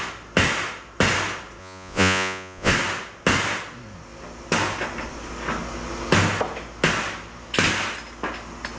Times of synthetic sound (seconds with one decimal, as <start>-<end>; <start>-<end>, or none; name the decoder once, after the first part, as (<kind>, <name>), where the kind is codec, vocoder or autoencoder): 1.6-2.7 (vocoder, Vocos)